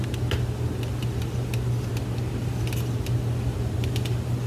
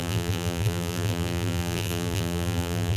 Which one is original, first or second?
first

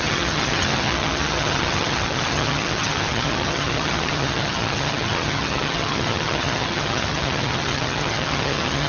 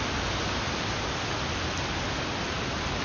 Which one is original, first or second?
second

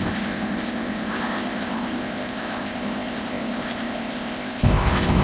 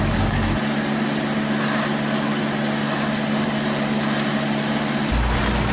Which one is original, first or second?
second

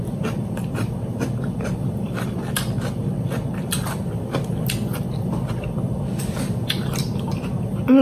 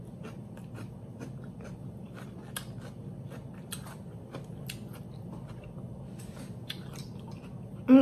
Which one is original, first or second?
second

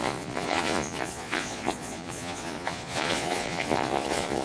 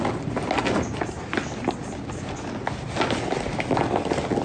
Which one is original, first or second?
second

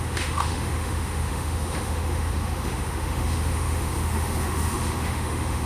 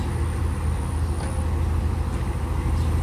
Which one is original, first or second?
second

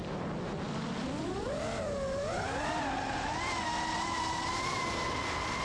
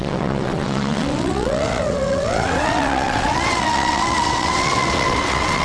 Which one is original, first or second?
first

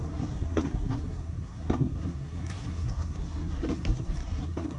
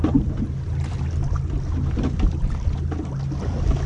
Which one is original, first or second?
second